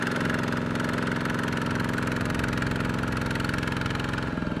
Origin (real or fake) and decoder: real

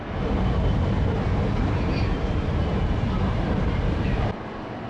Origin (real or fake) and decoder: real